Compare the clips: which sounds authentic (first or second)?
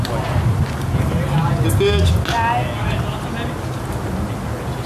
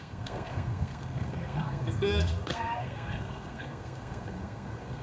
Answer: first